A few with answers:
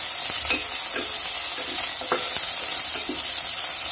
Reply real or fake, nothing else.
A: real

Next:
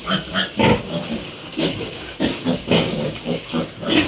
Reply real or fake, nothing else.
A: fake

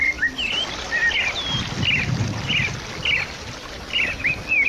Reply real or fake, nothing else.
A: real